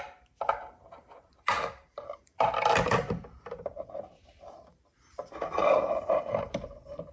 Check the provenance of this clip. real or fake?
fake